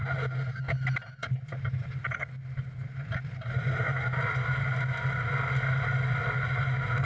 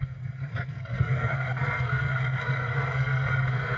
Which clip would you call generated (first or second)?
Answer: second